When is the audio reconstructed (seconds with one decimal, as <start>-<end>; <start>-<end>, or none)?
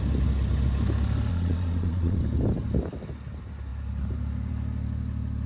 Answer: 1.3-2.2